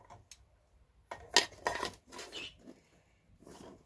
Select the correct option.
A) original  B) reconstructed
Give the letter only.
A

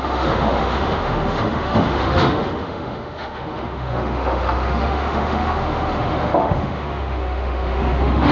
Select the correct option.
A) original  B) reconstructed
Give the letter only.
B